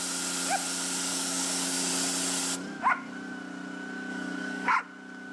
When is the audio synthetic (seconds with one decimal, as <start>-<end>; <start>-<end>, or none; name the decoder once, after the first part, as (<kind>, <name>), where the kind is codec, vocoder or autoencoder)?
1.1-1.9 (codec, DAC); 4.1-4.7